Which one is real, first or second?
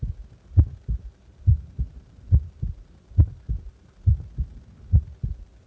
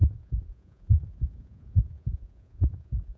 first